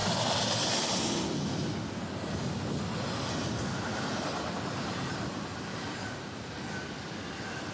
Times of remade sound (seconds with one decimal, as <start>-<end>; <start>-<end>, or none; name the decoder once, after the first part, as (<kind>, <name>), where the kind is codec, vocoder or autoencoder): none